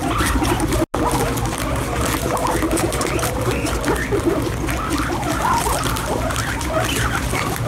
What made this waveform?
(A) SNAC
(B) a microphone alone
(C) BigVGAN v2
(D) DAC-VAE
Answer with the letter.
B